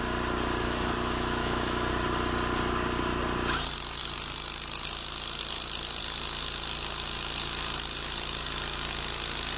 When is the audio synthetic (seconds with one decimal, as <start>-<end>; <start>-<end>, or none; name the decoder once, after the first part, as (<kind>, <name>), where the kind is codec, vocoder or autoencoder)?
0.6-1.9 (autoencoder, DAC-VAE)